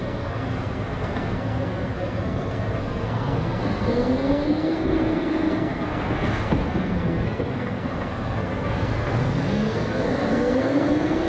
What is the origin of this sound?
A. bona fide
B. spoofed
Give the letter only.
B